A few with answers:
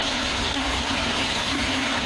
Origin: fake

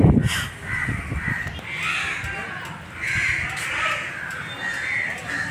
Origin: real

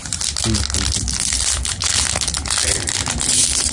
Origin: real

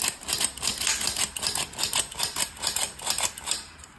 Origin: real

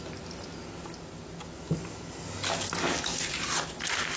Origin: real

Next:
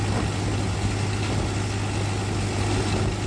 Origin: real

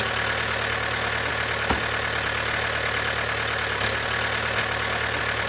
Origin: real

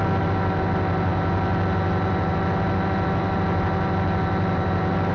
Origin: real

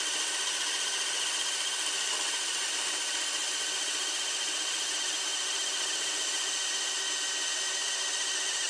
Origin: real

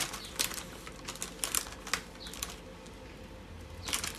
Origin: real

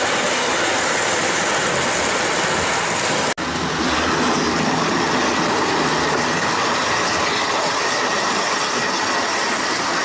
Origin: real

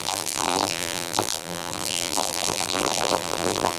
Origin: fake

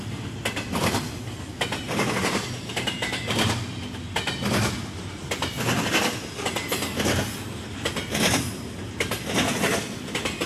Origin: real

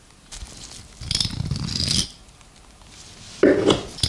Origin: real